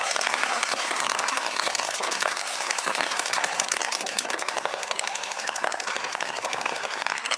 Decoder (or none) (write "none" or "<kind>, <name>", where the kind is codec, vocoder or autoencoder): codec, SNAC